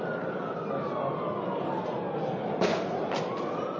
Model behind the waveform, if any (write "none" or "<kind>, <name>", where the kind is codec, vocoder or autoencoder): none